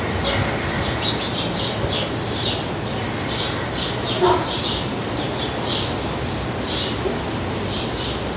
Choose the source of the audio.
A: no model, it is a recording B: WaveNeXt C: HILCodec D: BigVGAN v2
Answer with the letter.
A